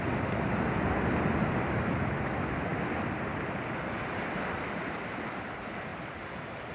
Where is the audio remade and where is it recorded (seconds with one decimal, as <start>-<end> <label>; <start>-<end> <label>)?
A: 0.0-6.7 recorded